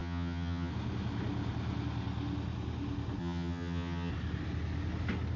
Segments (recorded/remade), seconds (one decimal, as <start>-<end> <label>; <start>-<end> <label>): 0.0-0.7 remade; 0.7-3.2 recorded; 3.2-4.1 remade; 4.1-5.4 recorded